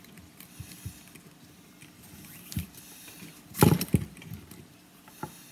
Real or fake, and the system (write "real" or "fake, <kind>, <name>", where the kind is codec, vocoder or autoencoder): real